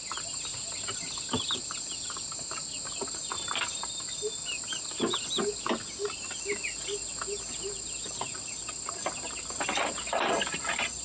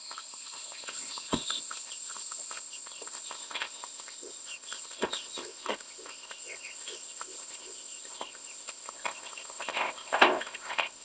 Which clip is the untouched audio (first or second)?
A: first